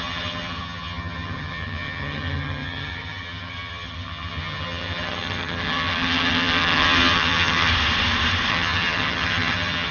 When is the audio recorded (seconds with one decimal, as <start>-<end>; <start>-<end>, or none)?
7.7-8.5